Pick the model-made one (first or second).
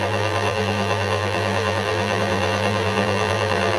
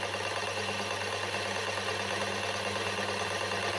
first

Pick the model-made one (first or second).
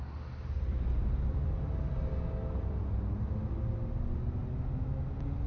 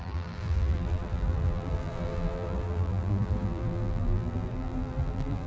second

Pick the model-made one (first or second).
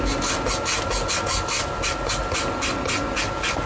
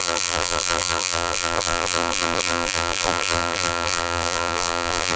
second